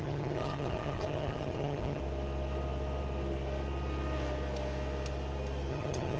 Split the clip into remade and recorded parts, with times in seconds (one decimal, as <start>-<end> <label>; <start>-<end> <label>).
0.0-2.0 remade; 2.0-5.7 recorded; 5.7-6.2 remade